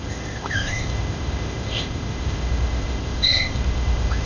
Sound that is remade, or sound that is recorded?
remade